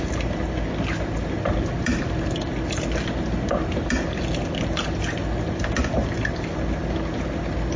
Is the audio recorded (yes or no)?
yes